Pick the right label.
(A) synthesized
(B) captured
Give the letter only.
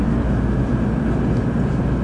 B